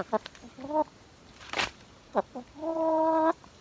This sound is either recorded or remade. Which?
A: remade